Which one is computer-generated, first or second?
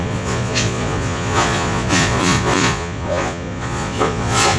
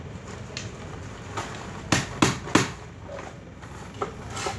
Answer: first